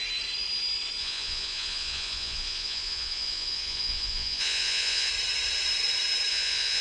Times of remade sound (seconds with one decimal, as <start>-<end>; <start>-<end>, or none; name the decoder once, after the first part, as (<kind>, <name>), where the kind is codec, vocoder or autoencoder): 1.0-5.1 (vocoder, Vocos); 6.3-6.8